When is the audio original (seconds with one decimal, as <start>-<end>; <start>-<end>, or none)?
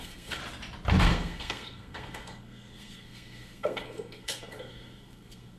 0.4-1.0